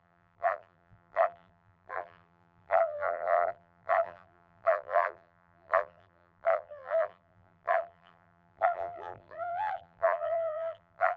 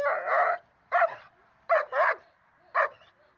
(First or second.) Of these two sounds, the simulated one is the first